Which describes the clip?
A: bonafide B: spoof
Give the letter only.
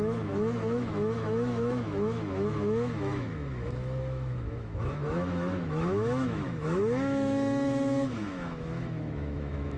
B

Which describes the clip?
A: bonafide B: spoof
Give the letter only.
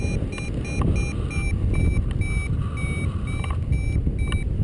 A